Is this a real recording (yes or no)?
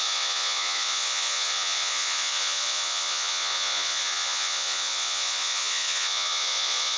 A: no